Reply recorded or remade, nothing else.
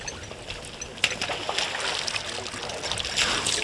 recorded